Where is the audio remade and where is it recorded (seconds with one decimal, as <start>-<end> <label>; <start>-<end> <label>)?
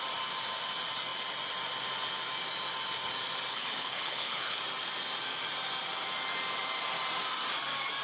0.0-3.5 recorded; 3.5-4.6 remade; 4.6-8.0 recorded